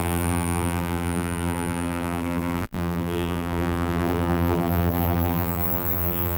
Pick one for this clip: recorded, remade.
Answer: remade